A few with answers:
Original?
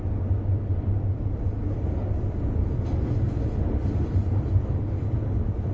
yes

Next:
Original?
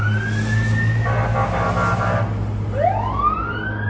yes